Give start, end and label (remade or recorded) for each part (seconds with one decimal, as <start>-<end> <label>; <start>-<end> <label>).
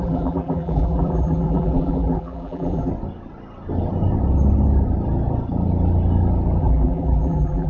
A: 0.0-2.9 remade; 2.9-6.6 recorded; 6.6-7.7 remade